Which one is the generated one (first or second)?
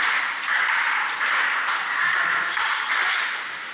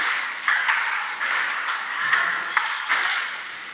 second